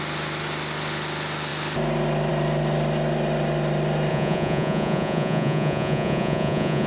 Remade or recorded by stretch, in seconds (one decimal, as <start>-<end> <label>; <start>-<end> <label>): 0.0-4.1 recorded; 4.1-6.9 remade